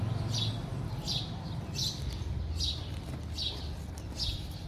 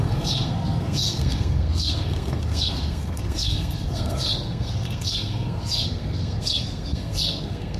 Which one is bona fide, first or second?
first